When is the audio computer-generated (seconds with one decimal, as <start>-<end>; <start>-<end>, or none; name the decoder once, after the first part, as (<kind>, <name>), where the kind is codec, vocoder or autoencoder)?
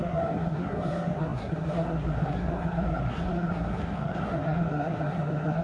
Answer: 0.0-5.6 (codec, SNAC)